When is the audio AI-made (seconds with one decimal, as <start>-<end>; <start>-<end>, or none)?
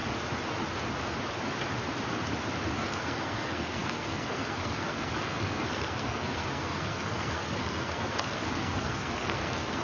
2.7-9.8